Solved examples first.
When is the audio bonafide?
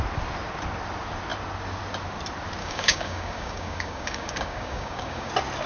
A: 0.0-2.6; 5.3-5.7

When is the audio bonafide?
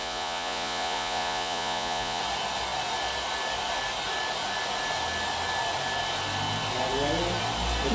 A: 2.2-7.9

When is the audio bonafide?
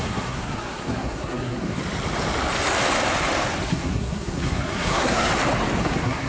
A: 1.8-3.7; 5.3-5.8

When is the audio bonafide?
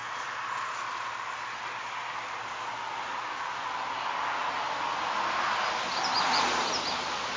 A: 0.0-7.4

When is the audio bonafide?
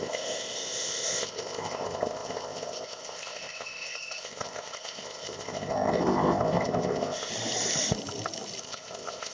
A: 7.3-8.6